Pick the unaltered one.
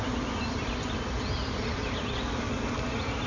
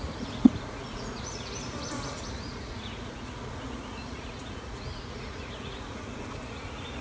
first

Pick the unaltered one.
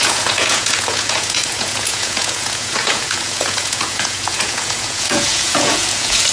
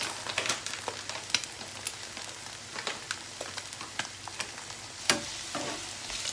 second